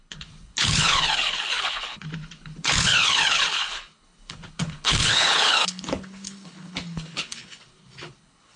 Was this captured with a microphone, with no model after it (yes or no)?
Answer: no